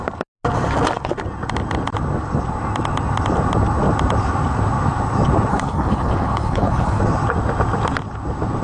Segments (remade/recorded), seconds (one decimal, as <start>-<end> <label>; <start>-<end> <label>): 0.0-5.5 recorded; 5.5-7.0 remade; 7.0-8.6 recorded